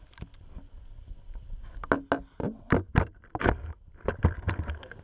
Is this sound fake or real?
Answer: real